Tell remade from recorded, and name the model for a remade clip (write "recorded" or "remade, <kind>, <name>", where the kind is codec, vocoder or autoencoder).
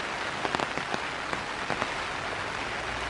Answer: recorded